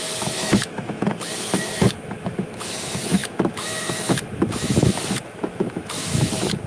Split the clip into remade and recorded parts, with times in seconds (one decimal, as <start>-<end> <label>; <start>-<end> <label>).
0.0-6.7 remade